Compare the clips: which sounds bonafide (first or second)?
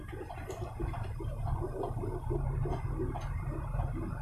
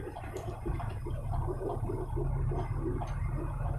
second